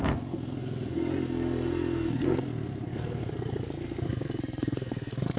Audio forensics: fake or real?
fake